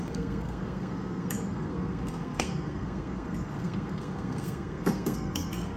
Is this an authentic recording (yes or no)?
no